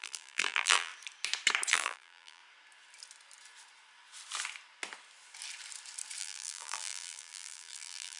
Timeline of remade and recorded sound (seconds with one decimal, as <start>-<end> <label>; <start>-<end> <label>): 0.0-0.9 remade; 0.9-1.7 recorded; 1.7-2.4 remade; 2.4-6.2 recorded; 6.2-8.2 remade

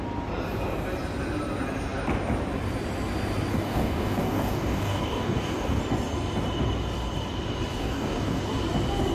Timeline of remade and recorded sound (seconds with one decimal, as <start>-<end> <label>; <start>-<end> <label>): 0.0-3.5 recorded; 3.5-5.8 remade; 5.8-7.8 recorded; 7.8-8.4 remade; 8.4-9.1 recorded

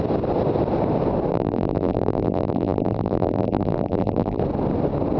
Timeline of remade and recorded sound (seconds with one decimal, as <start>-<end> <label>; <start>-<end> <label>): 0.0-1.3 recorded; 1.3-4.4 remade; 4.4-5.2 recorded

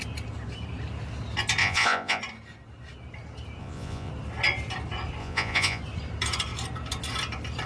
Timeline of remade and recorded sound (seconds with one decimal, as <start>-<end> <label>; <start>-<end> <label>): 0.0-1.6 recorded; 1.6-2.2 remade; 2.2-3.6 recorded; 3.6-4.1 remade; 4.1-5.2 recorded; 5.2-5.8 remade; 5.8-7.7 recorded

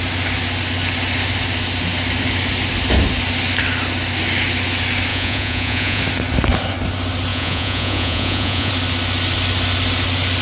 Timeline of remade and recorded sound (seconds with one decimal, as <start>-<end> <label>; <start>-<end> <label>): 0.0-5.1 recorded; 5.1-6.0 remade; 6.0-7.3 recorded; 7.3-8.7 remade; 8.7-10.4 recorded